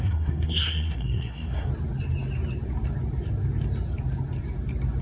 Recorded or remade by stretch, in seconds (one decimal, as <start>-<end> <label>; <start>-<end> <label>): 0.0-1.7 remade; 1.7-5.0 recorded